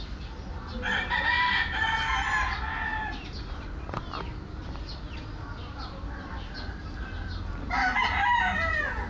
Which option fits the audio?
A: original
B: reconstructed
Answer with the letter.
A